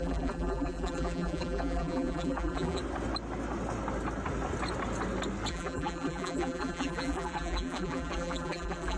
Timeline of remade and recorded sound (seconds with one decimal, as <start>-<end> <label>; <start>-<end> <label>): 0.0-2.8 remade; 2.8-5.5 recorded; 5.5-9.0 remade